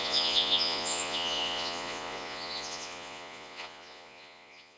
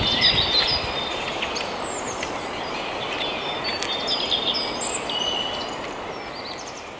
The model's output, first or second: first